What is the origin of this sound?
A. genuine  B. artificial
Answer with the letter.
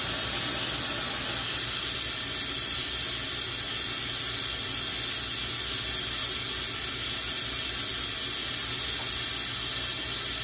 A